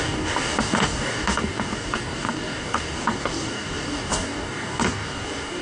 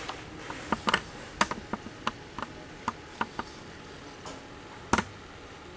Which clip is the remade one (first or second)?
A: first